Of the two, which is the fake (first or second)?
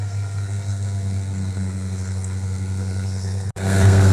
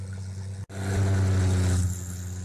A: first